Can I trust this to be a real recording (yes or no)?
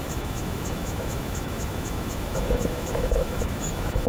no